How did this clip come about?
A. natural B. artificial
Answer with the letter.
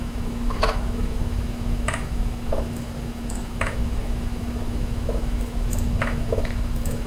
B